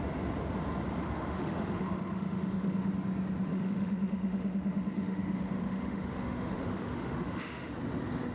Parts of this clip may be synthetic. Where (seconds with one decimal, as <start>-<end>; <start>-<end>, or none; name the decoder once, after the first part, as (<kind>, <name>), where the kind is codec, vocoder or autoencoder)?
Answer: 1.0-2.9 (autoencoder, DAC-VAE); 3.5-7.7